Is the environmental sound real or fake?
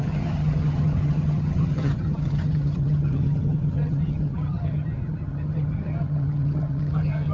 fake